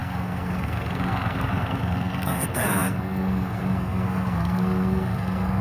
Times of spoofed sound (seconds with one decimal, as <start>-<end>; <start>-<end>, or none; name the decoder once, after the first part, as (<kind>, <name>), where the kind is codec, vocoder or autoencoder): 0.0-5.6 (codec, SNAC)